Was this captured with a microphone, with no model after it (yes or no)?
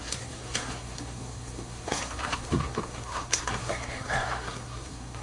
no